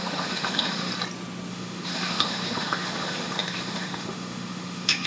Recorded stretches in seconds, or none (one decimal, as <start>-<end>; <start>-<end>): 0.9-1.5